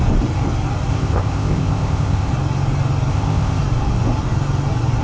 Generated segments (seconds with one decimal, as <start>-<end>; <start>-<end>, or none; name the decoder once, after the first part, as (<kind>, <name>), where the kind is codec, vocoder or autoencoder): 0.9-2.3 (codec, ZipCodec); 3.1-3.6